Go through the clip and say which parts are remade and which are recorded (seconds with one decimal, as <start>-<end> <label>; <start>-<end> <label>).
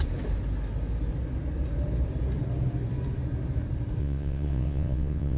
0.0-4.0 recorded; 4.0-5.4 remade